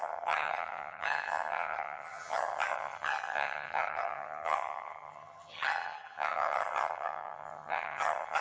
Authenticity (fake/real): fake